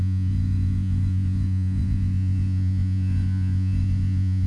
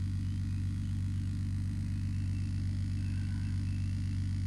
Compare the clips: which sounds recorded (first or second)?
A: second